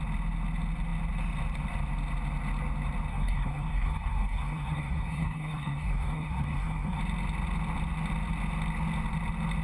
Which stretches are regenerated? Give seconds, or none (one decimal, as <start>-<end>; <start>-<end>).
3.1-7.0